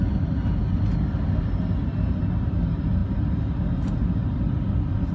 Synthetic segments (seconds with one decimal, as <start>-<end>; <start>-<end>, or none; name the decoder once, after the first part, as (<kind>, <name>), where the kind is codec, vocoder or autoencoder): none